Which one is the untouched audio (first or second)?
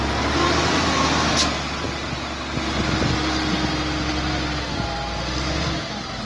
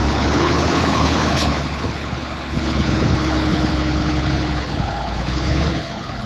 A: first